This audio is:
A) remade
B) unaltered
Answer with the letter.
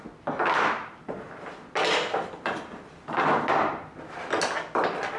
B